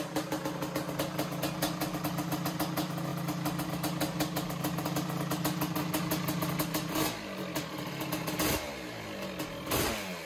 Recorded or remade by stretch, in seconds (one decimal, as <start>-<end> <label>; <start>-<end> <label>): 0.0-10.3 recorded